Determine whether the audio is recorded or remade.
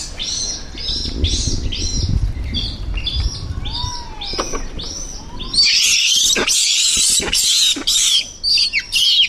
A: recorded